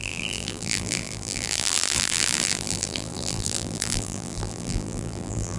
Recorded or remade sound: remade